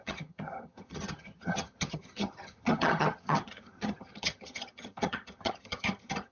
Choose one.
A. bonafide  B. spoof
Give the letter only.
B